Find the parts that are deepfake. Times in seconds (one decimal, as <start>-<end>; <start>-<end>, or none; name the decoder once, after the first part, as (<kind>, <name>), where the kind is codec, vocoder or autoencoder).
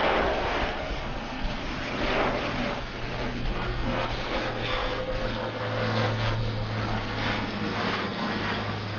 0.0-1.6 (codec, SNAC); 2.8-9.0